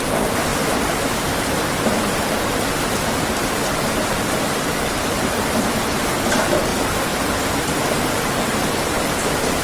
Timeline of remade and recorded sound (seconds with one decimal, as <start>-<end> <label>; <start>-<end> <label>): 0.0-6.7 remade; 6.7-8.1 recorded; 8.1-9.6 remade